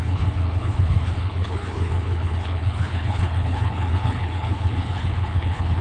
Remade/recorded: remade